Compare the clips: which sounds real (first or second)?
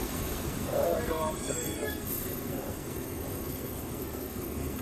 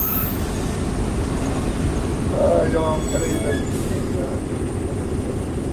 second